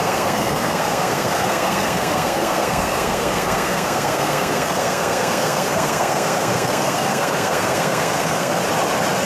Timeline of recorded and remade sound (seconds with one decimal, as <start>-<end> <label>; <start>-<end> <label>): 0.0-8.6 remade; 8.6-9.3 recorded